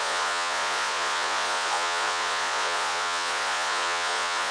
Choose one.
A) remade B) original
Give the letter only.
A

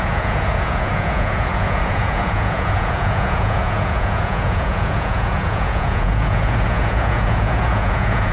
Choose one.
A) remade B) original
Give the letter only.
A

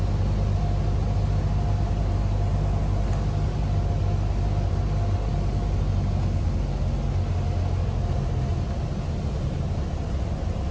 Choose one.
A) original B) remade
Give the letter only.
A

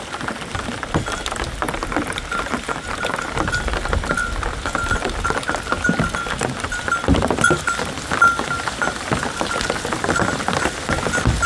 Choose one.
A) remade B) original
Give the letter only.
B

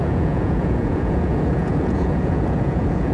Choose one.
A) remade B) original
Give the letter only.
A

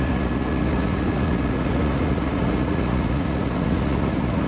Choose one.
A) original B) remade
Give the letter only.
B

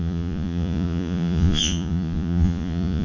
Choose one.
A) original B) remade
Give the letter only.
B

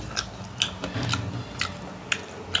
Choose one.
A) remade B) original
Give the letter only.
B